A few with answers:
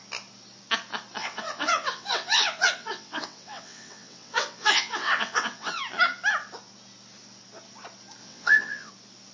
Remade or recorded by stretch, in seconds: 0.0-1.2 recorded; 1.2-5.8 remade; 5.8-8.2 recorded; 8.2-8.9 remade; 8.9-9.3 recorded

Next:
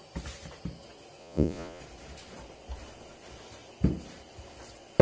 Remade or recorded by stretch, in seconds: 0.0-1.2 recorded; 1.2-1.8 remade; 1.8-5.0 recorded

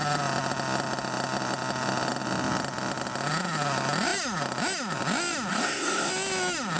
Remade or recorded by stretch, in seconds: 0.0-5.5 recorded; 5.5-6.1 remade; 6.1-6.8 recorded

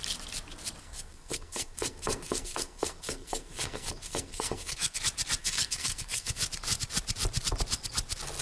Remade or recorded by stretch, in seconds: 0.0-0.8 recorded; 0.8-5.0 remade; 5.0-5.4 recorded; 5.4-6.4 remade; 6.4-8.4 recorded

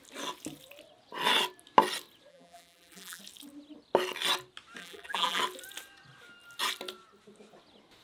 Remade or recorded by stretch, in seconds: 0.0-2.3 recorded; 2.3-3.2 remade; 3.2-4.8 recorded; 4.8-5.4 remade; 5.4-8.0 recorded